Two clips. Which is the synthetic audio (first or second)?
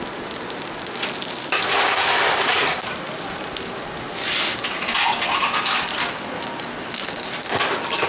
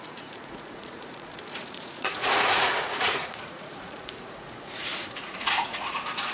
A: second